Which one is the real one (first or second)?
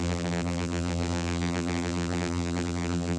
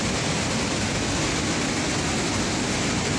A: second